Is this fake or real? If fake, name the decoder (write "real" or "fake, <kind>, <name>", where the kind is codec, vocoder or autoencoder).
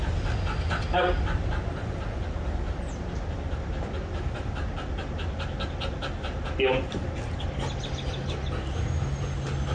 real